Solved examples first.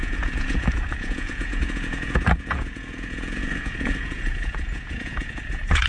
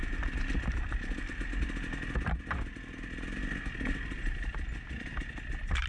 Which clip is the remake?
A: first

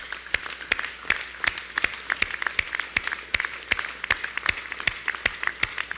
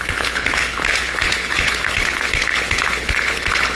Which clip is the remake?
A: second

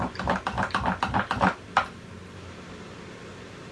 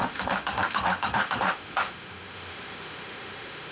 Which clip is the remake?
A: second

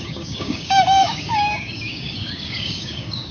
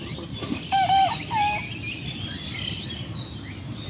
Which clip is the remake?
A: first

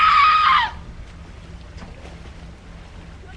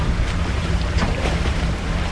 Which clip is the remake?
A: second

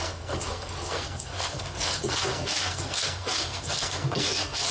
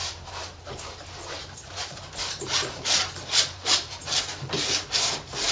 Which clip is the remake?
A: first